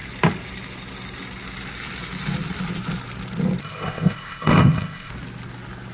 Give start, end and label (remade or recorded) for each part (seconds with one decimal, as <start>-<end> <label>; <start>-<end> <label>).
0.0-3.6 recorded; 3.6-5.1 remade; 5.1-5.9 recorded